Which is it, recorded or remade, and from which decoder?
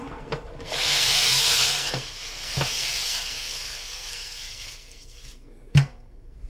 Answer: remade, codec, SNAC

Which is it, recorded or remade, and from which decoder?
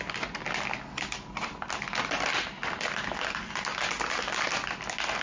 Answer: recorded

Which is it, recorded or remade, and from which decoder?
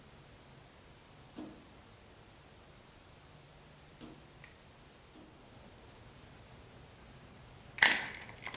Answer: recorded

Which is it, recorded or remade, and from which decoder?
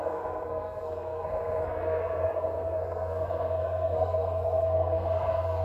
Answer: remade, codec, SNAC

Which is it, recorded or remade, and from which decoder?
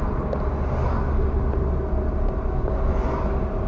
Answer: recorded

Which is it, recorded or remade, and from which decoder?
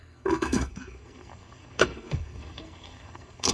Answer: remade, codec, SNAC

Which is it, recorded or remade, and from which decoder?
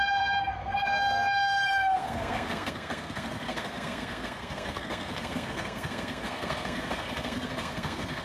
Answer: remade, codec, SNAC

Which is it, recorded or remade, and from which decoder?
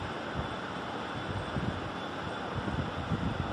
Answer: recorded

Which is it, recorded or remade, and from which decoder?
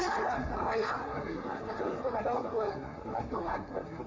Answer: remade, codec, SNAC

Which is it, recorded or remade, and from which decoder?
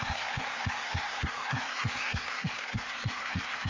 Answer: remade, codec, SNAC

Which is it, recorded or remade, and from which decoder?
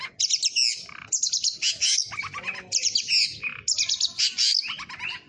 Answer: recorded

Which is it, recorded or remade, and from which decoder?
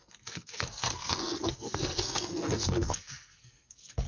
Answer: remade, codec, SNAC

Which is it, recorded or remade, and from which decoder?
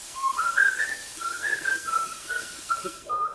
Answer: remade, codec, SNAC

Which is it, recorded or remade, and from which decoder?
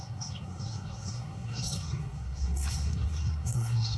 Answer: remade, codec, SNAC